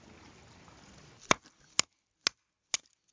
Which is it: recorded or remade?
recorded